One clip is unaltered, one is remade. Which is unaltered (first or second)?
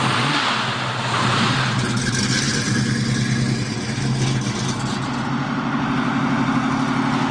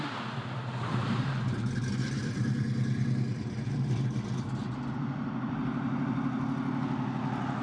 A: first